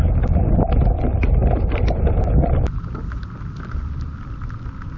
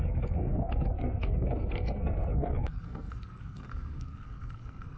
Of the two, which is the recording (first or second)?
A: first